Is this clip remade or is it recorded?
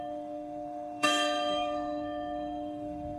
remade